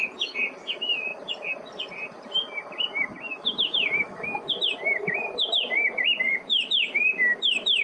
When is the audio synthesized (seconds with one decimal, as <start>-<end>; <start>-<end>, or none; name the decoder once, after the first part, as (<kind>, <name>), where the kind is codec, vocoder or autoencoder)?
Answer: 3.3-4.5 (autoencoder, DAC-VAE)